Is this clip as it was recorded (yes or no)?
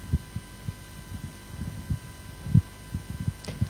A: yes